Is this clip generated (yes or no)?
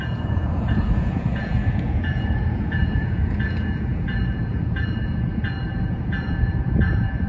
yes